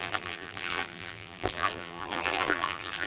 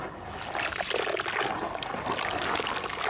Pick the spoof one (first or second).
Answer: first